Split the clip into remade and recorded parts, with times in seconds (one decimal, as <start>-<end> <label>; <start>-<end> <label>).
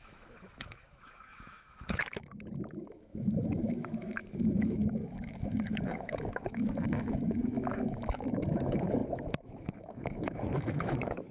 0.0-11.3 remade